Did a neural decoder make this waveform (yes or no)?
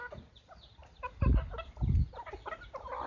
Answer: no